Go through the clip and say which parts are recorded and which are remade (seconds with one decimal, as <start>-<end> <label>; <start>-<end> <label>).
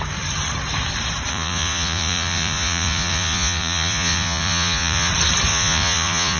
0.0-1.3 recorded; 1.3-5.1 remade; 5.1-5.5 recorded; 5.5-6.4 remade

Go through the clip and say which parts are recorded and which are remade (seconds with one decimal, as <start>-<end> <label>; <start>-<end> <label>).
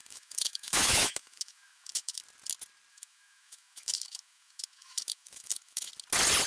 0.0-2.2 remade; 2.2-2.9 recorded; 2.9-5.9 remade; 5.9-6.5 recorded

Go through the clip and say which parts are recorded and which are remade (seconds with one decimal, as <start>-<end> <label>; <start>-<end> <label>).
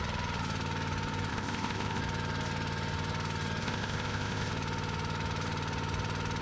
0.0-1.3 recorded; 1.3-2.0 remade; 2.0-3.6 recorded; 3.6-4.5 remade; 4.5-6.4 recorded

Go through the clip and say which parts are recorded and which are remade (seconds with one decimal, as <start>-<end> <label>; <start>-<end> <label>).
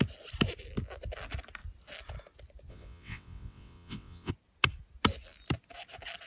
0.0-2.7 recorded; 2.7-4.3 remade; 4.3-6.3 recorded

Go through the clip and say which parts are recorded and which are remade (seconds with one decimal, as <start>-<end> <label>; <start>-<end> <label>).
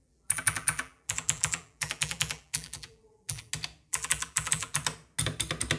0.0-3.5 remade; 3.5-3.9 recorded; 3.9-4.8 remade; 4.8-5.8 recorded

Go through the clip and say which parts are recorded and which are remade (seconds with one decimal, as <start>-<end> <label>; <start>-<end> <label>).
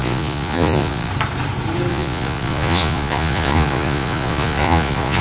0.0-1.1 remade; 1.1-1.9 recorded; 1.9-5.2 remade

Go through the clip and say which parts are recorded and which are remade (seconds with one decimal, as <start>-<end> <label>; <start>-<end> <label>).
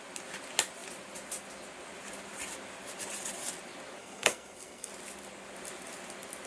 0.0-4.0 recorded; 4.0-4.9 remade; 4.9-6.5 recorded